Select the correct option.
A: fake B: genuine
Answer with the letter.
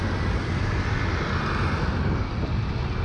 B